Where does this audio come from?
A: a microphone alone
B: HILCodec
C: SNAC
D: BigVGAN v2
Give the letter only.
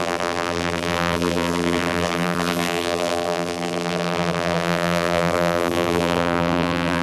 D